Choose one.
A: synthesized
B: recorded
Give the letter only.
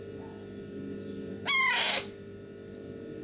B